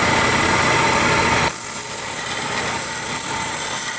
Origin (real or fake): real